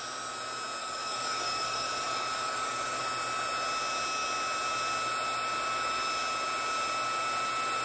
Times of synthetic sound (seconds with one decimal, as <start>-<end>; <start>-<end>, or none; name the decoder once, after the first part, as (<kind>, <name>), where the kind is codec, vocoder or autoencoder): 0.8-3.0 (codec, DAC)